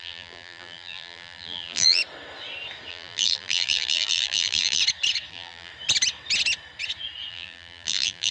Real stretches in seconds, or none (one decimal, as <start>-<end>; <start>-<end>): 2.0-2.9; 4.8-5.3; 5.7-7.3